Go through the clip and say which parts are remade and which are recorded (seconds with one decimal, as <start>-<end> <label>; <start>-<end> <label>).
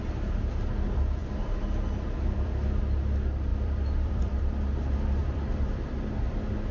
0.0-1.2 recorded; 1.2-2.8 remade; 2.8-3.5 recorded; 3.5-4.4 remade; 4.4-5.2 recorded; 5.2-5.7 remade; 5.7-6.7 recorded